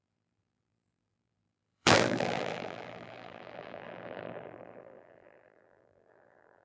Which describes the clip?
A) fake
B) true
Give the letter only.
A